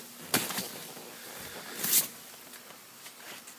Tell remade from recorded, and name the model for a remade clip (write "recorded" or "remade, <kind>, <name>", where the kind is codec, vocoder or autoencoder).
recorded